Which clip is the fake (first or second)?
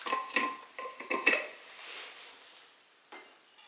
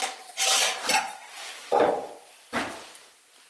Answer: second